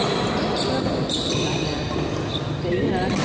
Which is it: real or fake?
real